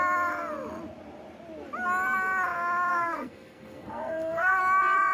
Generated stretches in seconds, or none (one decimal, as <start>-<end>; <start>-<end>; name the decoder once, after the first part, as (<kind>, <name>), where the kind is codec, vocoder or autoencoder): 2.9-4.6 (codec, SNAC)